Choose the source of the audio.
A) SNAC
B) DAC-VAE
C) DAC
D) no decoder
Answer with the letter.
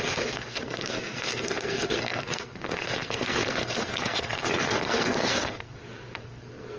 A